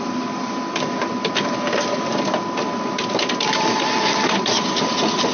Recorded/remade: remade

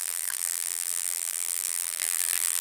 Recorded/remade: remade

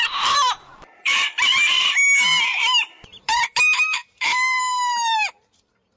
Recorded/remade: remade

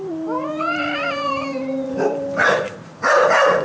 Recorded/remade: remade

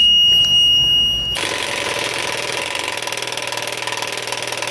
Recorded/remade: recorded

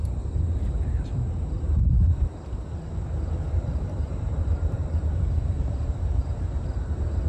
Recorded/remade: remade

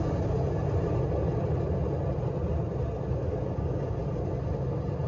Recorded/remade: recorded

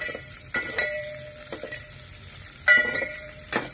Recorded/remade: remade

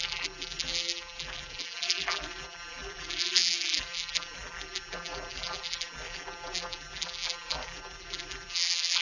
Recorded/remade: remade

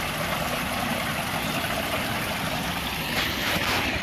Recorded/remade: recorded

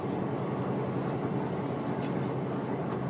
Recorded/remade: recorded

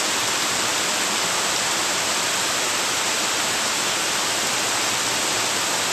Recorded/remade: remade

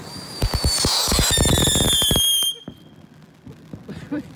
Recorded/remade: recorded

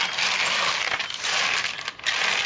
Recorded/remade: recorded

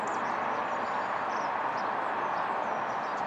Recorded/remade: remade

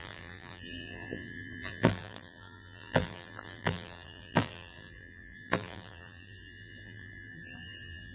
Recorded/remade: remade